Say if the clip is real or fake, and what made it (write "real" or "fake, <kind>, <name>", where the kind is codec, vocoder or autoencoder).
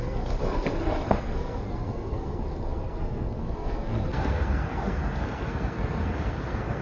fake, codec, SNAC